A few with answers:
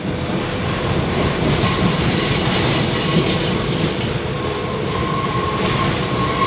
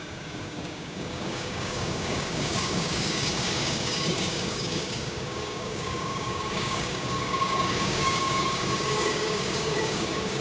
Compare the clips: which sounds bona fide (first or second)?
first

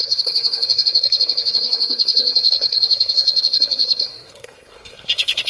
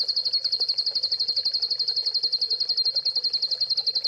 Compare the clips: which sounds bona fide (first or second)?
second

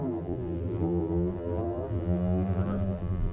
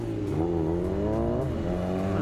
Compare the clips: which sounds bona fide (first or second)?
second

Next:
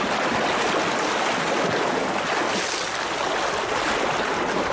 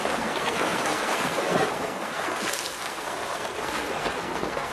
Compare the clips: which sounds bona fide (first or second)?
first